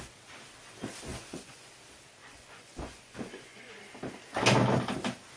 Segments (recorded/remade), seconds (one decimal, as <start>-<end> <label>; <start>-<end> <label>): 0.0-1.1 recorded; 1.1-1.7 remade; 1.7-2.2 recorded; 2.2-3.8 remade; 3.8-5.4 recorded